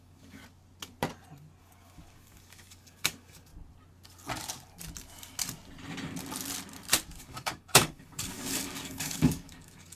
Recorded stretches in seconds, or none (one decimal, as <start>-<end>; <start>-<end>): 0.4-1.6; 3.5-7.2